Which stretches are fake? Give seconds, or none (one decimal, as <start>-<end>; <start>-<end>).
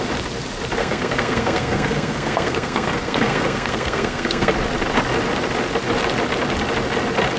0.8-4.5